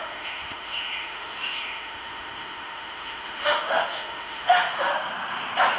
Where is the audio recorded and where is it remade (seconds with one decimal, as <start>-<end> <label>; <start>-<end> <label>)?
0.0-4.9 remade; 4.9-5.8 recorded